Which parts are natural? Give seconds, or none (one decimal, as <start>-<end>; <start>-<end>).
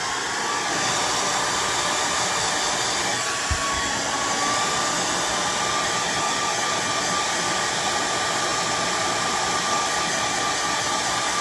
0.0-11.4